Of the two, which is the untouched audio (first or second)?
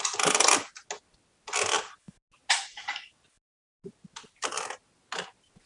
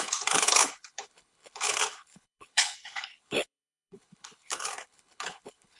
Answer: first